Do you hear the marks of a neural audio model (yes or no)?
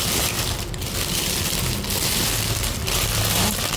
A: no